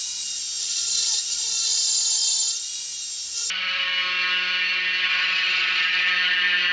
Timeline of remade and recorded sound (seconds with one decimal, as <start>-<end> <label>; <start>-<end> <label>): 0.0-0.6 recorded; 0.6-1.2 remade; 1.2-5.1 recorded; 5.1-6.1 remade; 6.1-6.7 recorded